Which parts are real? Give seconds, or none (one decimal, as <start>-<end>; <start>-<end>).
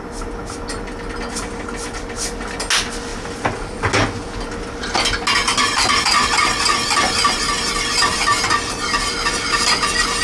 0.0-10.2